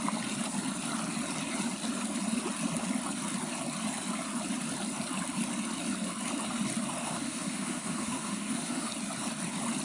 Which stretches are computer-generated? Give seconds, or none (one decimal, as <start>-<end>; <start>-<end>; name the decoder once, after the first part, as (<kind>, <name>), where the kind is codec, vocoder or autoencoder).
7.0-8.9 (autoencoder, DAC-VAE)